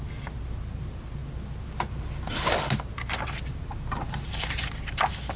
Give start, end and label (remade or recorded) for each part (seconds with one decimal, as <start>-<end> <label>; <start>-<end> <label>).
0.0-5.4 recorded